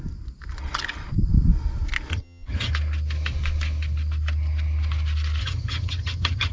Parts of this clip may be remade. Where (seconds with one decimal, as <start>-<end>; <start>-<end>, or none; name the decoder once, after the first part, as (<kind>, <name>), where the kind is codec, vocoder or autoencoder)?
2.1-2.7 (vocoder, HiFi-GAN); 5.4-6.5